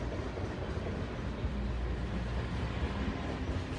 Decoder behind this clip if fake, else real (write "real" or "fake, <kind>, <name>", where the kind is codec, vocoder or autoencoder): real